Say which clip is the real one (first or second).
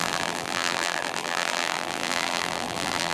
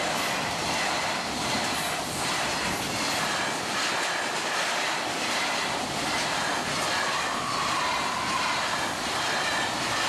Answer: second